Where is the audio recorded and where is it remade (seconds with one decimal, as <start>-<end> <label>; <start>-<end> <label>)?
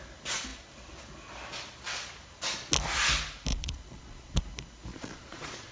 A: 0.0-3.5 recorded; 3.5-4.4 remade; 4.4-4.9 recorded; 4.9-5.7 remade